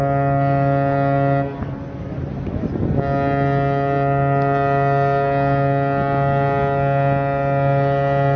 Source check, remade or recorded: recorded